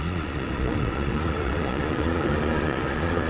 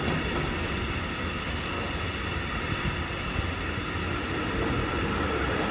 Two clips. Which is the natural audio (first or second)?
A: second